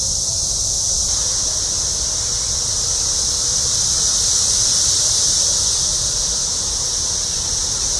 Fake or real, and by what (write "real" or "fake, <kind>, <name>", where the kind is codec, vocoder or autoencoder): real